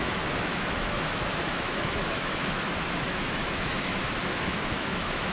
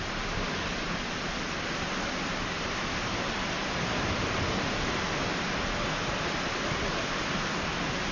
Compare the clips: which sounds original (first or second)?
second